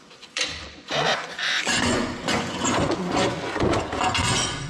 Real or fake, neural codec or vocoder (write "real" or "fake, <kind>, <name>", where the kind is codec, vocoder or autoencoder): fake, vocoder, Vocos